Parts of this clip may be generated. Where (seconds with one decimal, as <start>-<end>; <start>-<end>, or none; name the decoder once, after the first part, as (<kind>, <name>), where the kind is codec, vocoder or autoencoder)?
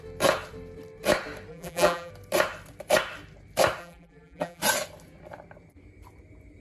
1.5-2.1 (vocoder, BigVGAN v2); 3.8-4.6